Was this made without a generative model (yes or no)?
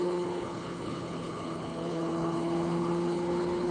no